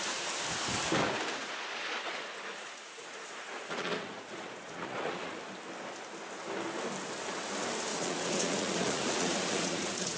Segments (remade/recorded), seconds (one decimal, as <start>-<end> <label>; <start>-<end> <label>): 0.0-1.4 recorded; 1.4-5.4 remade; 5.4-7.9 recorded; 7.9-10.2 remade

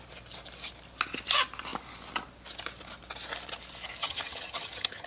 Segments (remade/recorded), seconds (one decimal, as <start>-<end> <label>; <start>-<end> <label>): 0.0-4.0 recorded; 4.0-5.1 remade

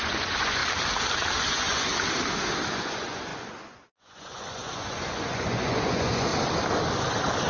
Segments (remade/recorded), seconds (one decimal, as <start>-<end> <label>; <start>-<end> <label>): 0.0-0.6 remade; 0.6-1.4 recorded; 1.4-1.9 remade; 1.9-2.7 recorded; 2.7-6.3 remade; 6.3-7.5 recorded